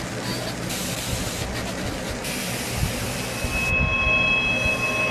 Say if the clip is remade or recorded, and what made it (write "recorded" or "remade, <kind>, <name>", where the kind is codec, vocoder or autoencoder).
recorded